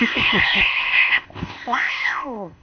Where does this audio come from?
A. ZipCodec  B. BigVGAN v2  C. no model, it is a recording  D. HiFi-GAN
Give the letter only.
A